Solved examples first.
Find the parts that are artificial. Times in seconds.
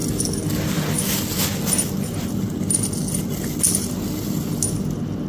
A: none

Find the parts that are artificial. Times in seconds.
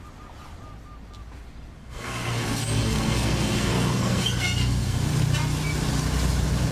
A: 1.8-5.0 (codec, SNAC)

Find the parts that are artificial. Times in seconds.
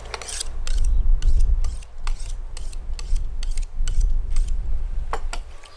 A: none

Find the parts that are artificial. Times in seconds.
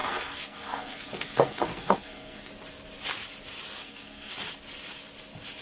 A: 0.0-2.5 (codec, SNAC); 3.8-4.3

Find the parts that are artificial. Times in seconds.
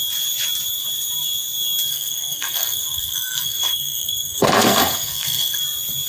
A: 1.9-5.6 (codec, SNAC)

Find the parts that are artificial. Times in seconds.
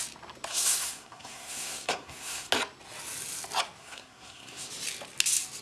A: 0.5-2.5 (codec, SNAC); 3.8-4.7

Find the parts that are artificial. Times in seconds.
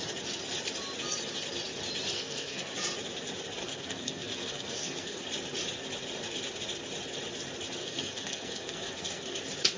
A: 2.1-2.7 (codec, SNAC); 3.6-5.2; 7.8-9.4